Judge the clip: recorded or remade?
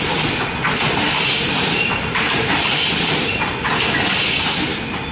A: recorded